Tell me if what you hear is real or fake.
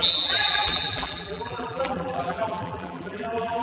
fake